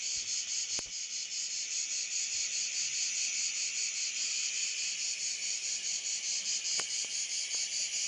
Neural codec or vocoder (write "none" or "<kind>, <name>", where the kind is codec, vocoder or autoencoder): none